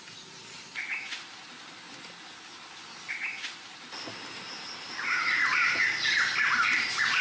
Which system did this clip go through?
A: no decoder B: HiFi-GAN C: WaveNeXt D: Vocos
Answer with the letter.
A